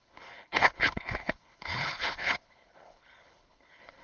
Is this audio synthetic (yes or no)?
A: yes